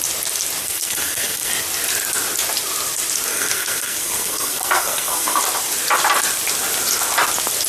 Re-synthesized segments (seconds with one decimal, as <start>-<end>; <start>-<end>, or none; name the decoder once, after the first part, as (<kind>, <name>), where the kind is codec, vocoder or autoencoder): 0.6-1.5 (codec, SNAC); 3.3-5.4